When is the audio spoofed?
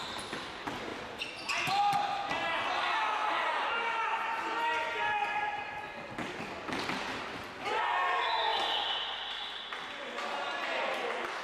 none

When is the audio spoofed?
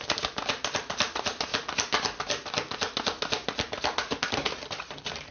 0.0-1.5 (vocoder, BigVGAN v2); 4.3-5.3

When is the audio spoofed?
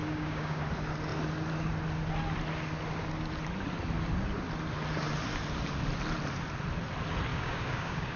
0.0-0.6 (codec, DAC); 7.3-8.2